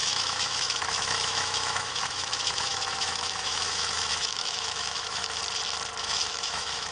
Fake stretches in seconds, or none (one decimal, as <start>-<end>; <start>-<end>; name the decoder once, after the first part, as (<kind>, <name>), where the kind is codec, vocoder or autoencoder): 0.0-5.4 (autoencoder, DAC-VAE); 6.0-6.9